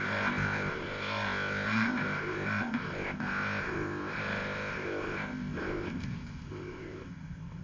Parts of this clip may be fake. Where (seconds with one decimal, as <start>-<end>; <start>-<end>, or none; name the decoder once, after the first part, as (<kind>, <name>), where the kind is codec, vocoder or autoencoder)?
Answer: 0.0-7.6 (codec, ZipCodec)